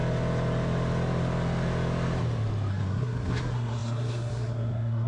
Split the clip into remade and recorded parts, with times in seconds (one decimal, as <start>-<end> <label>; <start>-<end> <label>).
0.0-2.7 recorded; 2.7-5.1 remade